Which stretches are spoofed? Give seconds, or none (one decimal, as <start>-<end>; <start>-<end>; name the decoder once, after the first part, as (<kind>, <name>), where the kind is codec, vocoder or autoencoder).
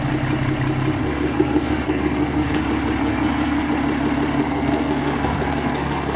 1.0-2.6 (codec, SNAC); 3.0-3.7; 4.4-6.2